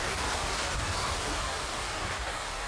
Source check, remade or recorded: remade